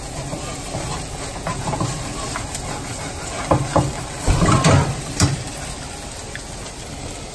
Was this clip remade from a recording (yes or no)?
no